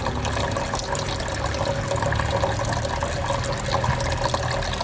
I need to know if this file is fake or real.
real